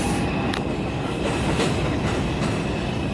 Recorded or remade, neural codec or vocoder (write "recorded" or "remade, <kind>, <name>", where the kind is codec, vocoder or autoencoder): recorded